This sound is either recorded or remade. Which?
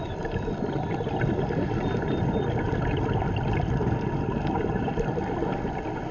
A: recorded